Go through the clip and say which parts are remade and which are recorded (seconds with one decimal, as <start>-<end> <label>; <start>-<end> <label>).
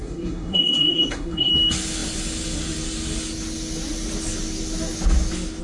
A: 0.0-1.5 remade; 1.5-5.6 recorded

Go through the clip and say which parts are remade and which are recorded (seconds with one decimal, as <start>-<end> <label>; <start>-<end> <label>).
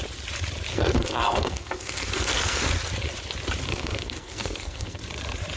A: 0.0-0.7 recorded; 0.7-2.7 remade; 2.7-3.7 recorded; 3.7-5.0 remade; 5.0-5.6 recorded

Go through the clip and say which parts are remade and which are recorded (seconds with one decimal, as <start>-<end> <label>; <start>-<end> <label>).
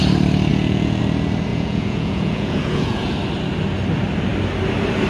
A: 0.0-0.5 recorded; 0.5-1.0 remade; 1.0-1.5 recorded; 1.5-3.1 remade; 3.1-5.1 recorded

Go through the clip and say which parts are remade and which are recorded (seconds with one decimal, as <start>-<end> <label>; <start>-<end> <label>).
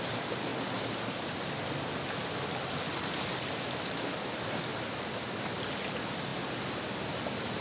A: 0.0-7.6 recorded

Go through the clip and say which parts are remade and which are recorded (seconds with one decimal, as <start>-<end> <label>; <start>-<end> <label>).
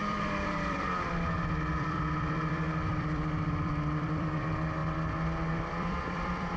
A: 0.0-4.8 remade; 4.8-5.5 recorded; 5.5-6.6 remade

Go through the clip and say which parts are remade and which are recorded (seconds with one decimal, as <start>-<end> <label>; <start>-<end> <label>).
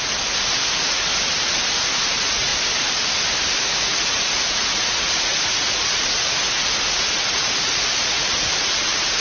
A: 0.0-1.1 remade; 1.1-1.7 recorded; 1.7-2.5 remade; 2.5-3.6 recorded; 3.6-9.2 remade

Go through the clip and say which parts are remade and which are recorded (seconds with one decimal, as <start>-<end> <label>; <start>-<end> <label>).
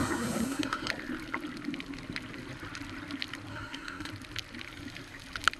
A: 0.0-0.9 remade; 0.9-3.5 recorded; 3.5-4.1 remade; 4.1-5.6 recorded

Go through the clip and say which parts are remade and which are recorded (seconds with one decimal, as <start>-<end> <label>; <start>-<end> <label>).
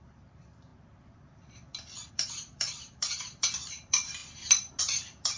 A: 0.0-0.7 remade; 0.7-2.1 recorded; 2.1-5.4 remade